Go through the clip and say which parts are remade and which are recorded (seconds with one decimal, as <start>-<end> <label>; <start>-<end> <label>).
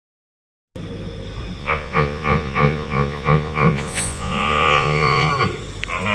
0.0-1.6 recorded; 1.6-5.3 remade; 5.3-6.1 recorded